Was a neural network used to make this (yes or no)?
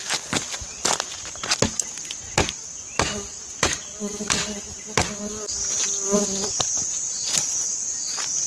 no